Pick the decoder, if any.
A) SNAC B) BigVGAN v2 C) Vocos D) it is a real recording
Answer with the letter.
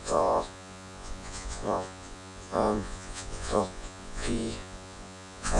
C